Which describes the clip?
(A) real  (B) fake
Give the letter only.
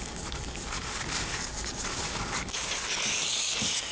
B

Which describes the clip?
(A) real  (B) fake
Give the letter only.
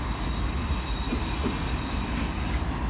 A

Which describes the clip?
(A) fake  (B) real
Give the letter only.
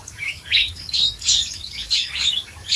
A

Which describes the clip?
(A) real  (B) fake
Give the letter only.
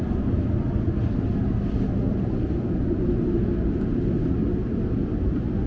A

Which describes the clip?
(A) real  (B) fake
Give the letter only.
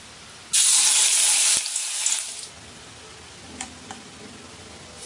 A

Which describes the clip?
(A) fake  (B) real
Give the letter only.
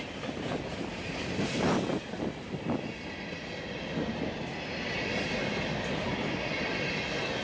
B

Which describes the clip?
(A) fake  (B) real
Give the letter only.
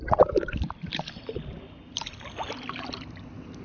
B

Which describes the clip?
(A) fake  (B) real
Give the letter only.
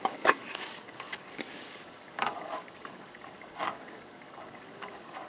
A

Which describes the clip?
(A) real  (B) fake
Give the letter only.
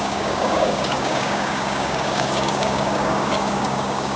B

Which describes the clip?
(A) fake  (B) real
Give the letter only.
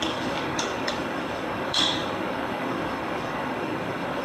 A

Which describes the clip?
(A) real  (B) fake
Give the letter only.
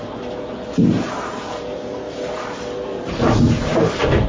A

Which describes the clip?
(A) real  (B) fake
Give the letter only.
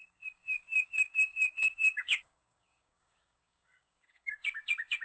B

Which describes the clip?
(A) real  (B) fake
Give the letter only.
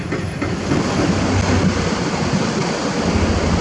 A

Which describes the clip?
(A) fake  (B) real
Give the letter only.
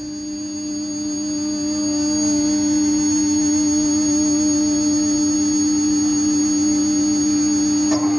B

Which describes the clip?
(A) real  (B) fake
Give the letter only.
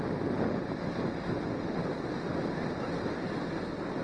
A